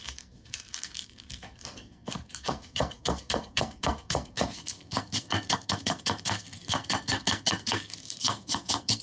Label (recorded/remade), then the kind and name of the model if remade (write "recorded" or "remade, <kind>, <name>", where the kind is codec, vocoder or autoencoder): remade, codec, SNAC